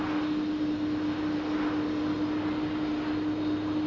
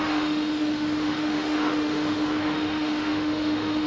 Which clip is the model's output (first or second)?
second